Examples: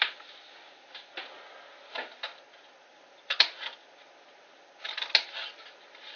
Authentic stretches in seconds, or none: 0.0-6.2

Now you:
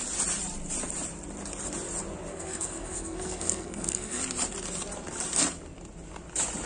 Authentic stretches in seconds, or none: 0.0-2.3; 4.2-6.7

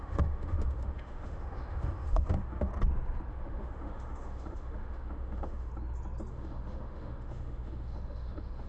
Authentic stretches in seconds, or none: 2.7-3.3; 5.7-6.3

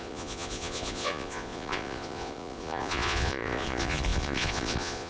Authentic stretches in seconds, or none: none

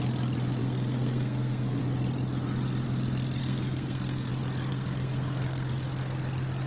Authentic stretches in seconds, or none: 0.0-0.6; 1.8-3.4; 4.3-4.7; 5.7-6.7

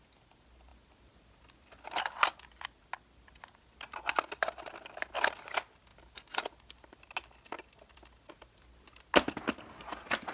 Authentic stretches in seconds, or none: 0.0-10.3